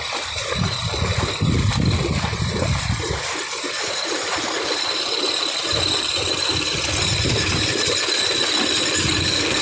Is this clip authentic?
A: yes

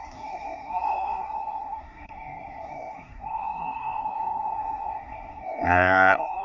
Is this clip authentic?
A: no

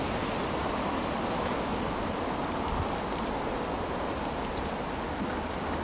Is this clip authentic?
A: yes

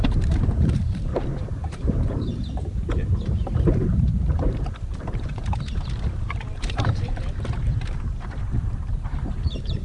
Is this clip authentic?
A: no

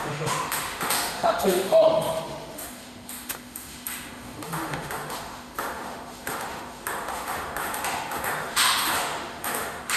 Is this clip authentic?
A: no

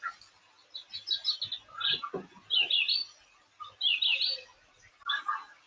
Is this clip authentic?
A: yes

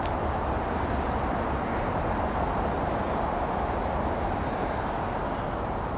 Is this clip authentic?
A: yes